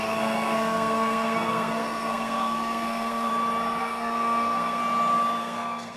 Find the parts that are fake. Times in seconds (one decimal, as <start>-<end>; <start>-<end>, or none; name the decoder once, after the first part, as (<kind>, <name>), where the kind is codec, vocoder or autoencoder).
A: 0.0-3.3 (codec, SNAC); 3.8-4.8; 5.4-6.0